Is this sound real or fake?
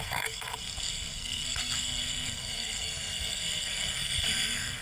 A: fake